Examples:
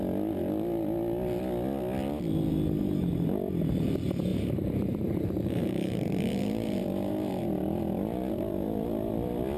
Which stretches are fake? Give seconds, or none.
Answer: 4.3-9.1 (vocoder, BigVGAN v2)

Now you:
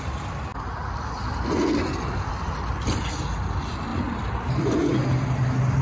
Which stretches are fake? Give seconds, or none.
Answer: 0.0-0.5 (vocoder, BigVGAN v2); 2.3-4.9

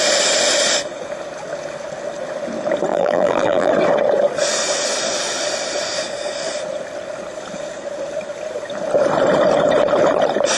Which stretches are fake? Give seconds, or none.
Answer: 2.9-3.7 (vocoder, BigVGAN v2)

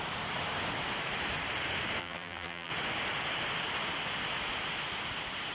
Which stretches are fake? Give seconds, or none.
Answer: 2.0-2.7 (vocoder, BigVGAN v2)

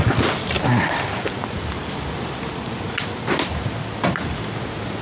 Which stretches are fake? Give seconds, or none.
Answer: 1.4-4.2 (vocoder, BigVGAN v2)

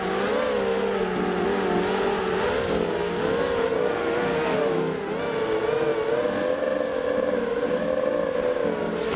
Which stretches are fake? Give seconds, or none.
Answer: none